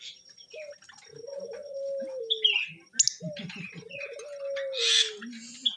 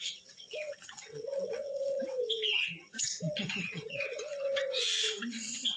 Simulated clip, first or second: second